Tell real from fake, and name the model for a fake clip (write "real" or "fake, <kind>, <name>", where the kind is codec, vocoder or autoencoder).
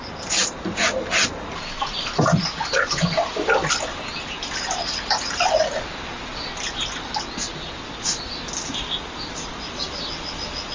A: real